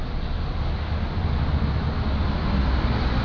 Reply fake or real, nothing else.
real